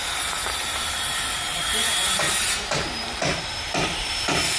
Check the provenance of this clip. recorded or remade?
remade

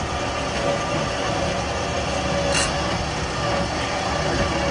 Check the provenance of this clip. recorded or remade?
recorded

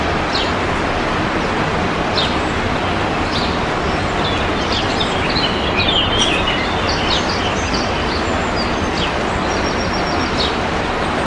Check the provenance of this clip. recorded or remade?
recorded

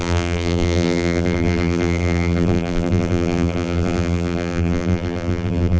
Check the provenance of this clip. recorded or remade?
remade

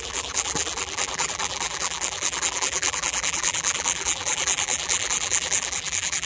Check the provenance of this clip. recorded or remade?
remade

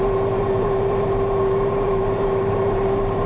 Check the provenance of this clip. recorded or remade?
remade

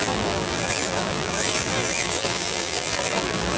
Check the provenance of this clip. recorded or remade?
remade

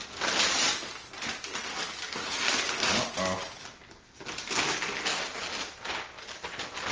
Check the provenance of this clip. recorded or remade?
recorded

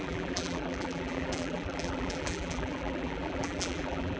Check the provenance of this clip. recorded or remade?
remade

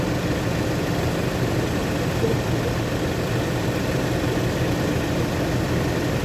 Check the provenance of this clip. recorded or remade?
recorded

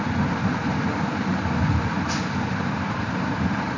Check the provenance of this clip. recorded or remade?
remade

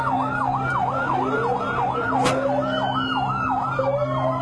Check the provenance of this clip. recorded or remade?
recorded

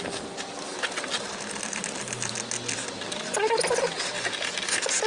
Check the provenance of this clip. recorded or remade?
recorded